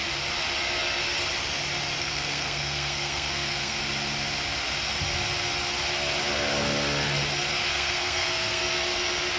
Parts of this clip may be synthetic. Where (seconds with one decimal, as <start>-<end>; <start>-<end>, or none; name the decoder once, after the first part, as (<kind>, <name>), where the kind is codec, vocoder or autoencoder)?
2.0-3.8 (codec, SNAC); 7.7-8.6